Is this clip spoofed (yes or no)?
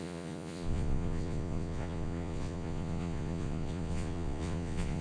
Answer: yes